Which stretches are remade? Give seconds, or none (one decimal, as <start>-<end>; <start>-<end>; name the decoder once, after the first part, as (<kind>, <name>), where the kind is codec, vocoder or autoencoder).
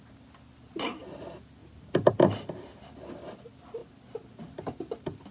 none